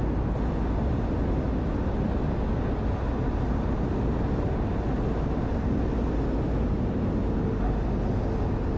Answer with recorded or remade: recorded